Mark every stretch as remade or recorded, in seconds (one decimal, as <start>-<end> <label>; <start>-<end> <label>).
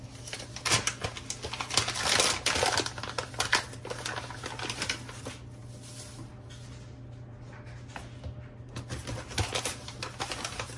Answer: 0.0-10.8 recorded